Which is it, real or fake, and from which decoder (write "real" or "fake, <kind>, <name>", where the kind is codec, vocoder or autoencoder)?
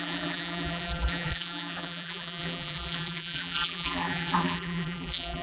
fake, vocoder, BigVGAN v2